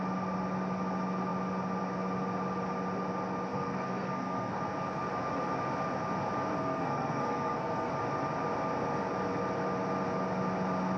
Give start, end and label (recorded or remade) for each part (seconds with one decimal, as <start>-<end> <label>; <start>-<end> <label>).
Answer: 0.0-3.5 recorded; 3.5-4.6 remade; 4.6-6.6 recorded; 6.6-7.9 remade; 7.9-11.0 recorded